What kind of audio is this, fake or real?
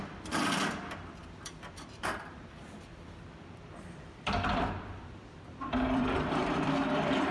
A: fake